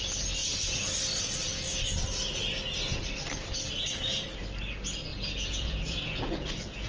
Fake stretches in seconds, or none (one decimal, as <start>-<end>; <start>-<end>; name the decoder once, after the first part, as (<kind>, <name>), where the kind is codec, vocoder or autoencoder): 0.4-0.9 (vocoder, Vocos); 5.1-6.9